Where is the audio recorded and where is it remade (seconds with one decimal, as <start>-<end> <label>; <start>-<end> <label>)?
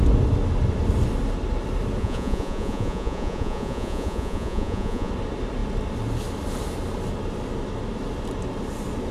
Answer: 0.0-2.0 recorded; 2.0-5.1 remade; 5.1-9.1 recorded